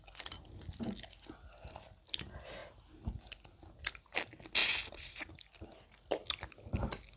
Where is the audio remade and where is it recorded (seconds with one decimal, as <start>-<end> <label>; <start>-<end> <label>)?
0.0-7.2 recorded